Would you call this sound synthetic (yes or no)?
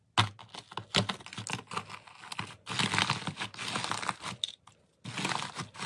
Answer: no